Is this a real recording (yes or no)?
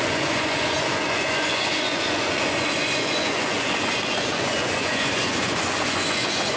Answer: no